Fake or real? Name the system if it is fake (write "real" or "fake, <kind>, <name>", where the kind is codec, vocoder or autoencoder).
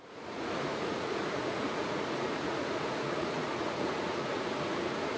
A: fake, vocoder, Vocos